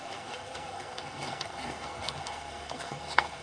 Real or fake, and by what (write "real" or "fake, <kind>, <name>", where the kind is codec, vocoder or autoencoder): fake, codec, SNAC